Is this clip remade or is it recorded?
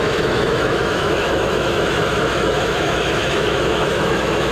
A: remade